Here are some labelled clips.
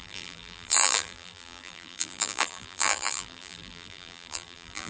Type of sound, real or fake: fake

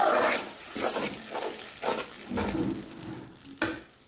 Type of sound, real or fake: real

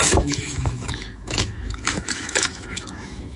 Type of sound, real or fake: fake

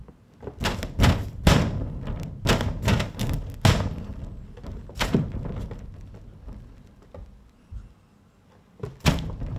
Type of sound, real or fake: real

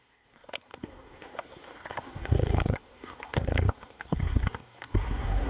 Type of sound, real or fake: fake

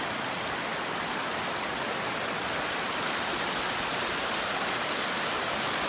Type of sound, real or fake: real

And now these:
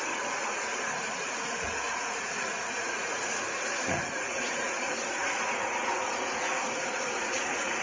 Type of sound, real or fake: fake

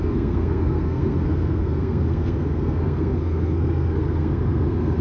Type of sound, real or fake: fake